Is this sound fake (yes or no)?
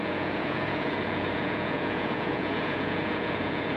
yes